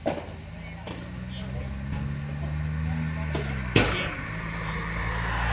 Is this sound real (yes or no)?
yes